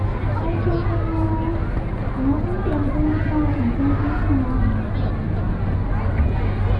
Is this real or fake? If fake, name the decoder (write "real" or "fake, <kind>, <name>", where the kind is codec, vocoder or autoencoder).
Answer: real